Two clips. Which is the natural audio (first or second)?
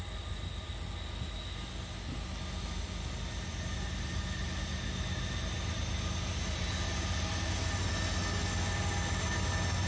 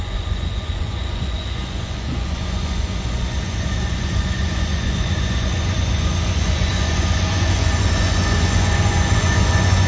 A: first